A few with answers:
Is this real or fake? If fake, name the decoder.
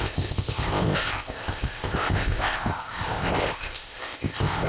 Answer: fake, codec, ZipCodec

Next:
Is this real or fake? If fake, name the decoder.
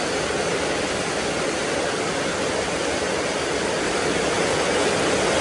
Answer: real